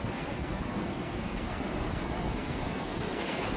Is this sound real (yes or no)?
no